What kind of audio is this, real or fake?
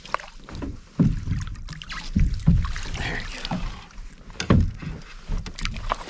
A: fake